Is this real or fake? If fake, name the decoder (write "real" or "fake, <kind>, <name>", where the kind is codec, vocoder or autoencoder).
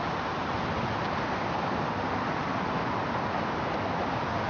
real